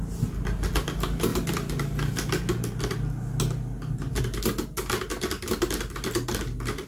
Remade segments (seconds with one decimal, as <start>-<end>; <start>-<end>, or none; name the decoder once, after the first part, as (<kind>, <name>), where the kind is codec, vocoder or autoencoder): none